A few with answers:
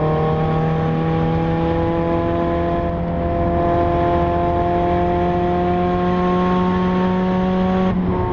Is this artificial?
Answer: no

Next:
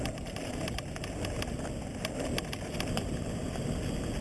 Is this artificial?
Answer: no